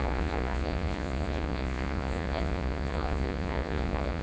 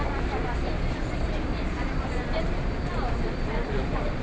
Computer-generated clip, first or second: first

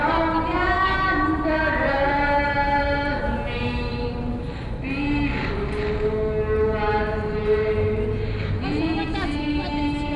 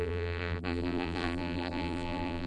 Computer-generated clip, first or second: second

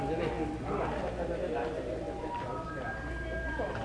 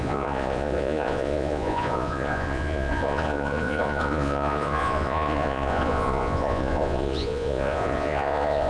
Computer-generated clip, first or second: second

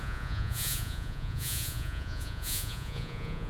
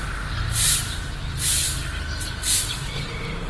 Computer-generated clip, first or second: first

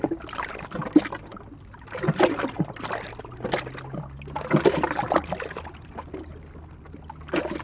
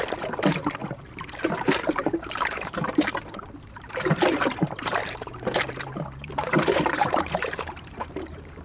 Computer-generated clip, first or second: second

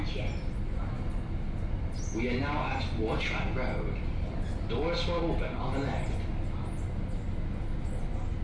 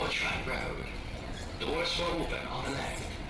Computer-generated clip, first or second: second